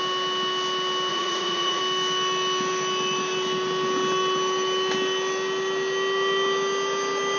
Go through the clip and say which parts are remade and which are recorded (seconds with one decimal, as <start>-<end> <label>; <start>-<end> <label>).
0.0-1.1 recorded; 1.1-1.8 remade; 1.8-7.4 recorded